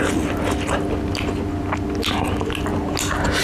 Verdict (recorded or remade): recorded